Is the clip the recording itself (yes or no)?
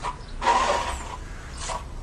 yes